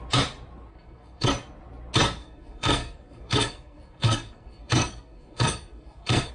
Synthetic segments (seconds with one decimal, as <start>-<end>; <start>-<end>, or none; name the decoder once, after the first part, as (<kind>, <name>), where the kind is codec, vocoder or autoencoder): 0.7-1.3 (codec, SNAC); 2.2-6.3